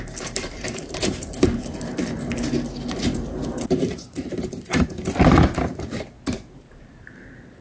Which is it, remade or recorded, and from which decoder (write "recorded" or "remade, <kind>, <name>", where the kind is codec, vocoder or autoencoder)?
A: remade, vocoder, BigVGAN v2